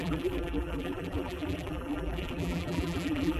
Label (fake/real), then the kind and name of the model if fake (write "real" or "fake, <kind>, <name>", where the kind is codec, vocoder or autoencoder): fake, vocoder, BigVGAN v2